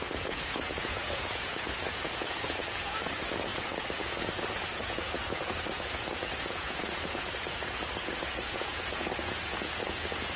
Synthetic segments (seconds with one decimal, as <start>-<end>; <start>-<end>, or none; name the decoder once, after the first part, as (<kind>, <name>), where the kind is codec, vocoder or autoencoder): 0.0-10.4 (vocoder, Vocos)